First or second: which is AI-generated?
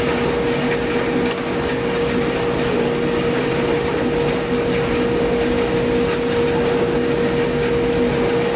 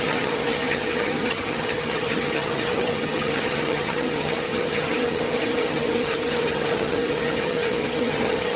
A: second